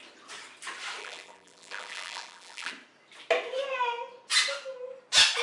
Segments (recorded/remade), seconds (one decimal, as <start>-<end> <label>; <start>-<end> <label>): 0.0-1.0 recorded; 1.0-2.7 remade; 2.7-5.4 recorded